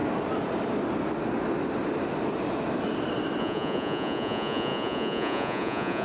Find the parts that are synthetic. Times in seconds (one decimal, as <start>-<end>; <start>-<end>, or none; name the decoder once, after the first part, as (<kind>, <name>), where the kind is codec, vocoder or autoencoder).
3.4-6.0 (vocoder, Vocos)